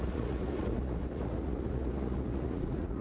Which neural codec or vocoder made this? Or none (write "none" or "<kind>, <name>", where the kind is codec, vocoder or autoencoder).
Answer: vocoder, Vocos